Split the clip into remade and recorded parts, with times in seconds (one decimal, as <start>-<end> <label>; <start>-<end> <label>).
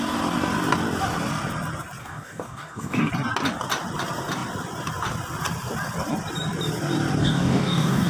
0.0-2.0 recorded; 2.0-3.1 remade; 3.1-7.2 recorded; 7.2-8.1 remade